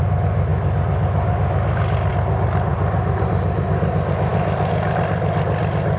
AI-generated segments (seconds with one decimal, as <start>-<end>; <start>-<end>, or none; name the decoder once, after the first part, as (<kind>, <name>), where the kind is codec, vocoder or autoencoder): 2.7-3.8 (vocoder, BigVGAN v2)